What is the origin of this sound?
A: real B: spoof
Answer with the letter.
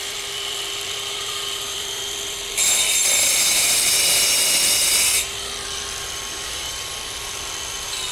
B